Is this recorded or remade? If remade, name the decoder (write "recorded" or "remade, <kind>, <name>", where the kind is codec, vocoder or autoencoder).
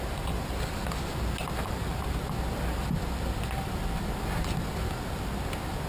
recorded